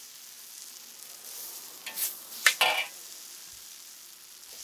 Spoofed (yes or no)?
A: no